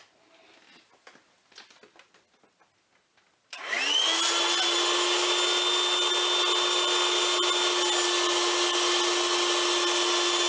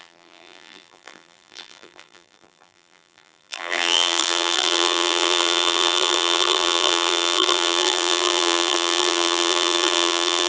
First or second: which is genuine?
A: first